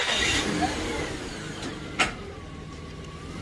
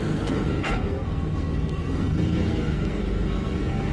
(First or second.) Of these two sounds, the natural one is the first